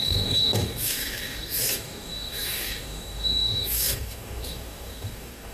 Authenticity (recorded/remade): remade